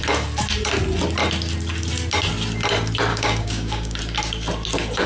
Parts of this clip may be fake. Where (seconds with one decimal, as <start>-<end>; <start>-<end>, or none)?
3.1-4.0